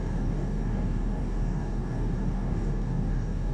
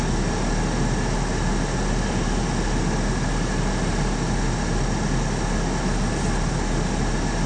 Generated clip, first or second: first